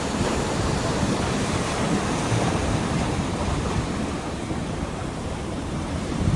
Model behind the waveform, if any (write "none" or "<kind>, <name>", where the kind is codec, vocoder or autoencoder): vocoder, BigVGAN v2